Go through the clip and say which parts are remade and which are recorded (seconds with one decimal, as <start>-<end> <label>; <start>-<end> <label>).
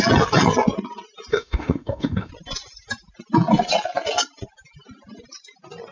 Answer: 0.0-1.3 recorded; 1.3-2.3 remade; 2.3-5.9 recorded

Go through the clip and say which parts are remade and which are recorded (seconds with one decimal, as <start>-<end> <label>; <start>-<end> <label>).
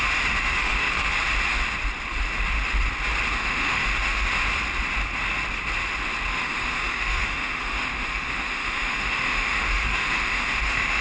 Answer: 0.0-0.4 recorded; 0.4-1.1 remade; 1.1-3.4 recorded; 3.4-4.4 remade; 4.4-6.3 recorded; 6.3-11.0 remade